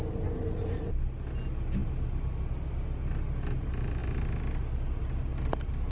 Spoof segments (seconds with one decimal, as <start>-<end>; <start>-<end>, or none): none